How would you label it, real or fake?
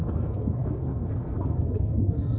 fake